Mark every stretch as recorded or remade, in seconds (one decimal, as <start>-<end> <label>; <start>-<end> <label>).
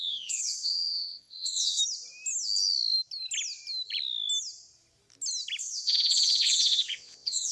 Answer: 0.0-1.8 remade; 1.8-5.6 recorded; 5.6-7.5 remade